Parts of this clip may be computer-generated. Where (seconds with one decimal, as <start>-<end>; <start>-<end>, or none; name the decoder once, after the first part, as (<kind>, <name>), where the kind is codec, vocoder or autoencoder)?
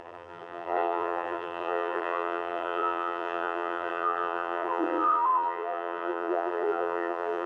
0.0-7.5 (vocoder, BigVGAN v2)